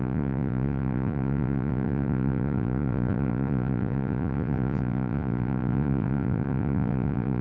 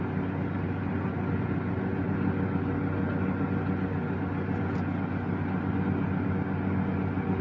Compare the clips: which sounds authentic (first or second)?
second